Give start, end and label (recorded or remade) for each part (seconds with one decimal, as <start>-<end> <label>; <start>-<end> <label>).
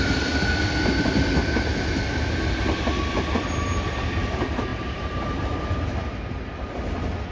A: 0.0-4.7 recorded; 4.7-5.4 remade; 5.4-7.3 recorded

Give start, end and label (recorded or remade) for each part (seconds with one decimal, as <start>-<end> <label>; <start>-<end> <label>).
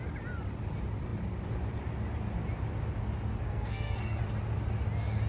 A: 0.0-3.5 recorded; 3.5-4.2 remade; 4.2-5.3 recorded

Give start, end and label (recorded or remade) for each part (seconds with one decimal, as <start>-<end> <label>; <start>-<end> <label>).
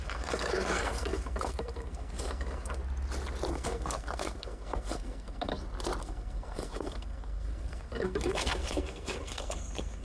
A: 0.0-2.8 remade; 2.8-3.5 recorded; 3.5-5.5 remade; 5.5-6.0 recorded; 6.0-10.0 remade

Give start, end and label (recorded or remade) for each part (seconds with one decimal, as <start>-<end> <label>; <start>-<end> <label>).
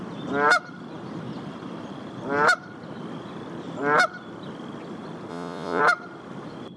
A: 0.0-5.3 recorded; 5.3-5.8 remade; 5.8-6.8 recorded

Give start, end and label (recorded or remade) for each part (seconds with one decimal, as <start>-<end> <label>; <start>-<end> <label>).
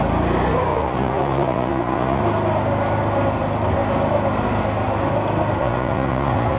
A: 0.0-0.7 recorded; 0.7-2.2 remade; 2.2-5.6 recorded; 5.6-6.6 remade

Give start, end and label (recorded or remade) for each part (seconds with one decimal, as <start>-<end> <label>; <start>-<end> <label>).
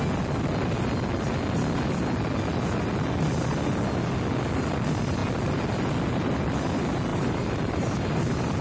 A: 0.0-7.1 recorded; 7.1-8.6 remade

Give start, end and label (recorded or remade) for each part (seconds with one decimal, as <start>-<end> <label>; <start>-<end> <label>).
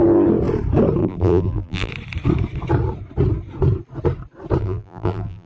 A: 0.0-1.0 recorded; 1.0-1.9 remade; 1.9-4.6 recorded; 4.6-5.5 remade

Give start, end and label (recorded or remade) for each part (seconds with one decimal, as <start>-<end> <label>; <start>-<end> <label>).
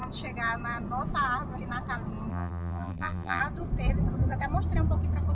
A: 0.0-2.3 recorded; 2.3-3.4 remade; 3.4-5.3 recorded